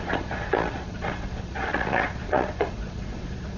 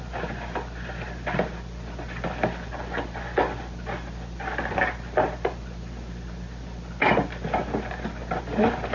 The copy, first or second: first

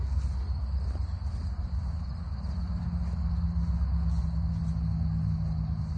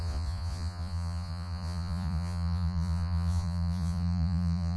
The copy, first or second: second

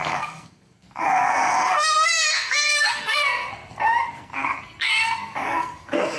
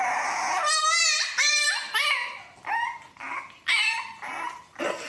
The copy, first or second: first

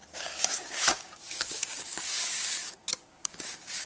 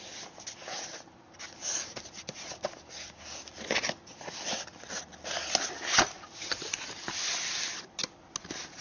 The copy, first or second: first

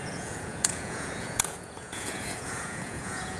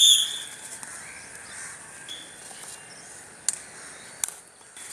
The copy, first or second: first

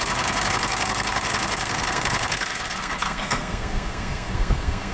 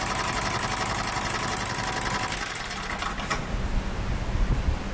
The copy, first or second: first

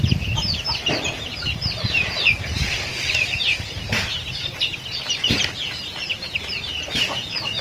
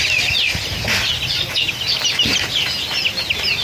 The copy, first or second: first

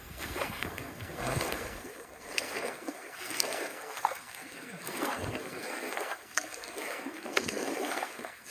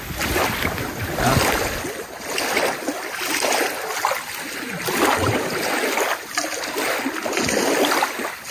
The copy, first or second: first